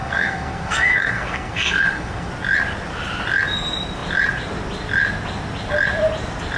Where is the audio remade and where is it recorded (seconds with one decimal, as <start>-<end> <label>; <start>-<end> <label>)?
0.0-2.3 remade; 2.3-6.6 recorded